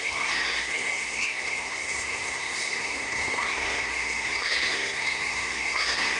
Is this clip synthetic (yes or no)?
yes